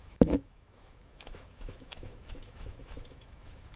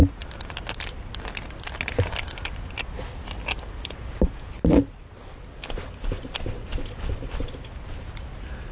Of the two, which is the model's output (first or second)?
first